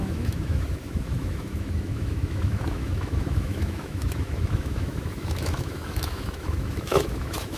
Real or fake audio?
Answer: fake